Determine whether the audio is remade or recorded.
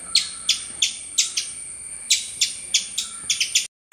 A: recorded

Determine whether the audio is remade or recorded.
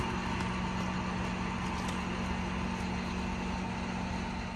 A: recorded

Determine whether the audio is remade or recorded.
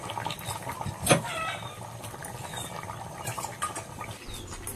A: recorded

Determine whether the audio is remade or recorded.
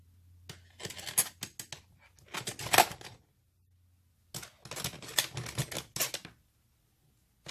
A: recorded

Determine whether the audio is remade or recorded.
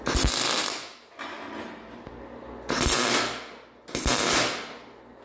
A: recorded